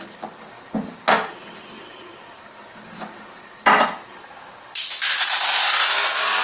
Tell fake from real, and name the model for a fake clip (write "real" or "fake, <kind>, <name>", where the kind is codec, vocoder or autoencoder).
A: real